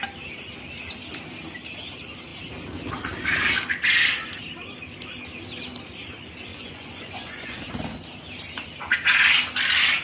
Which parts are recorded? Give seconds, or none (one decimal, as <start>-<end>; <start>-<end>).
0.0-6.5; 7.6-10.0